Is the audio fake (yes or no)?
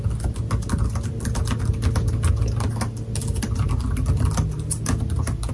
no